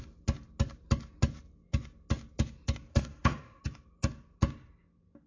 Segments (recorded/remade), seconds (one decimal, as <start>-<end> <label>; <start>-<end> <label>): 0.0-2.9 recorded; 2.9-3.6 remade; 3.6-5.3 recorded